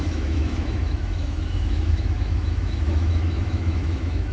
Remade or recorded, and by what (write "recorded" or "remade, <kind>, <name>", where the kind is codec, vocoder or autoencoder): remade, autoencoder, DAC-VAE